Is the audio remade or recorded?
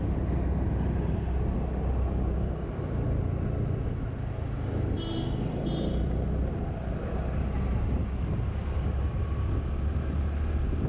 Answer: recorded